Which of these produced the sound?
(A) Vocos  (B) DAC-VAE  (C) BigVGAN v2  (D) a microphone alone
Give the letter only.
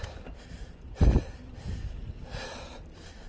D